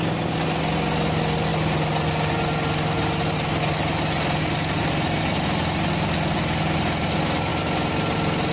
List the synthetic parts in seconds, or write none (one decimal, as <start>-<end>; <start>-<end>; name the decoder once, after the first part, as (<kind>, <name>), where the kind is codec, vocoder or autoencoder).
none